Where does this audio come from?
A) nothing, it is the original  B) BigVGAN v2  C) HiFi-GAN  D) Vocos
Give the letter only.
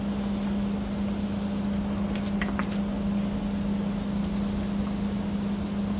A